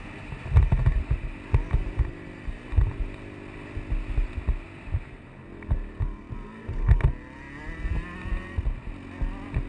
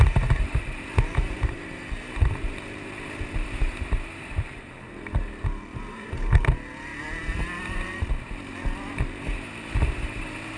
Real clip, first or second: first